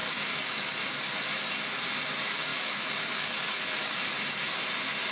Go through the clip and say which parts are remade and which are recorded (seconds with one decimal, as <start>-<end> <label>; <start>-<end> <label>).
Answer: 0.0-0.8 remade; 0.8-2.5 recorded; 2.5-4.0 remade; 4.0-5.1 recorded